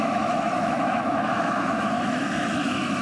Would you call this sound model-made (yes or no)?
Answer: yes